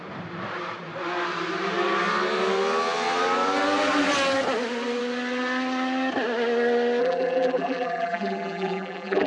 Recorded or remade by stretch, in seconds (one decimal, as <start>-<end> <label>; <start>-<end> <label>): 0.0-7.0 recorded; 7.0-9.3 remade